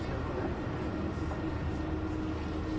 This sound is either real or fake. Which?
real